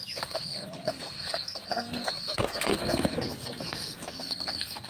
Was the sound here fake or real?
fake